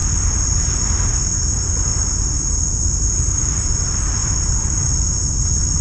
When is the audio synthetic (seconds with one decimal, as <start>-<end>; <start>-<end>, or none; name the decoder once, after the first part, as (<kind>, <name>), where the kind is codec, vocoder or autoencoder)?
1.9-3.4 (vocoder, BigVGAN v2); 4.2-5.1